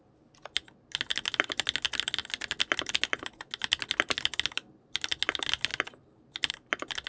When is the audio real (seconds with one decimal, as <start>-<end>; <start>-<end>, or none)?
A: 0.0-7.1